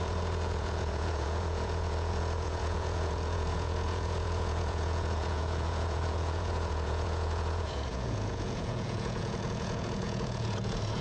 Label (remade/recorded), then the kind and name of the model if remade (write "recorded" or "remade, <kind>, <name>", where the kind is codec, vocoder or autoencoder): remade, vocoder, Vocos